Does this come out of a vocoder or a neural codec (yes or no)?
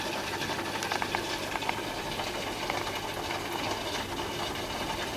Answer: no